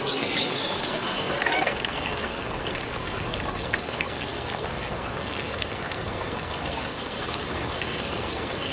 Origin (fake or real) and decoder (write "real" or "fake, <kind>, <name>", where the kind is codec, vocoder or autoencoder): fake, codec, SNAC